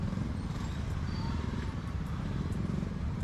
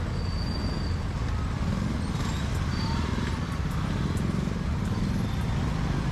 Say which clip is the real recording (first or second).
second